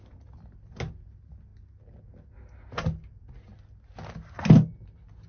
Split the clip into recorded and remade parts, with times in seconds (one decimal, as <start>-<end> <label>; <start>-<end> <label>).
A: 0.0-5.3 recorded